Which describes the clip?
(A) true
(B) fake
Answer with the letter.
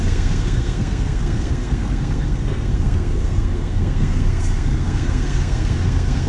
B